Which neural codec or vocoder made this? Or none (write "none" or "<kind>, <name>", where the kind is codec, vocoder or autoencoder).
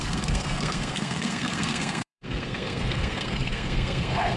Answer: codec, SNAC